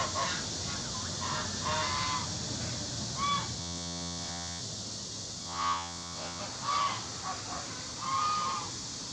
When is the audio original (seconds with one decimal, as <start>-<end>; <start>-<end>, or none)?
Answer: 0.0-3.6; 4.6-5.4; 6.4-9.1